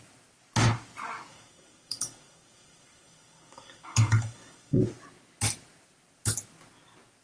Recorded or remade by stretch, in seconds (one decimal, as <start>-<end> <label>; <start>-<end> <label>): 0.0-1.3 recorded; 1.3-4.8 remade; 4.8-7.2 recorded